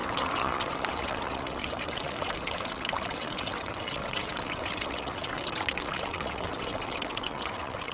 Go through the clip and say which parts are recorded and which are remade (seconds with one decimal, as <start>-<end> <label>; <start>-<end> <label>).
0.0-7.9 remade